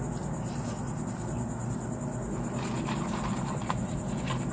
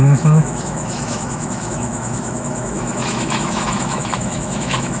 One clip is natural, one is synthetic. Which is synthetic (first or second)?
second